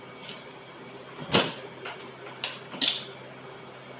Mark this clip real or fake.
real